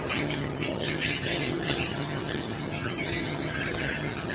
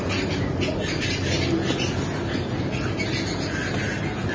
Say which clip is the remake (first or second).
first